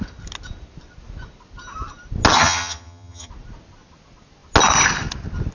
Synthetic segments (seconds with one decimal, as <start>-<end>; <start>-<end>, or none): 2.3-3.3